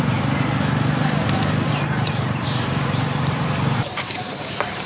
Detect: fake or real fake